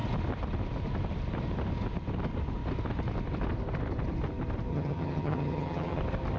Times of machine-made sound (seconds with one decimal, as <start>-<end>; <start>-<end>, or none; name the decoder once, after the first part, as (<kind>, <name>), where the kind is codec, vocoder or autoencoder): 4.7-6.0 (vocoder, HiFi-GAN)